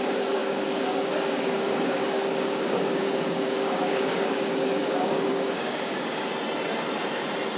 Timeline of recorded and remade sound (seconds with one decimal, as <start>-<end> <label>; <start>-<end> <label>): 0.0-6.3 remade; 6.3-7.6 recorded